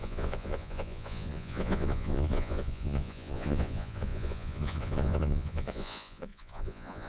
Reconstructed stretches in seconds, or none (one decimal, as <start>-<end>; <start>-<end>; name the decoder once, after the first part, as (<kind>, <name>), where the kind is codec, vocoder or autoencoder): 0.0-7.1 (vocoder, Vocos)